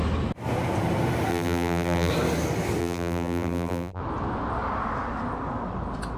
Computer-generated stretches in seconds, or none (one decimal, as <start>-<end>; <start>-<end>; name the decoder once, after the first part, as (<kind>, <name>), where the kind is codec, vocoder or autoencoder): 1.3-2.1 (vocoder, BigVGAN v2); 2.8-4.0